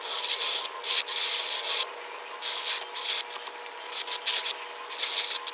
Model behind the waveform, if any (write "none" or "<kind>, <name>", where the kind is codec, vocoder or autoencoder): none